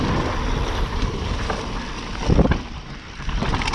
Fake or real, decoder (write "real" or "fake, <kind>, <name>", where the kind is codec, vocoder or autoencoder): fake, vocoder, BigVGAN v2